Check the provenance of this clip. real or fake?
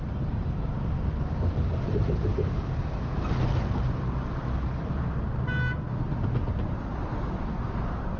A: real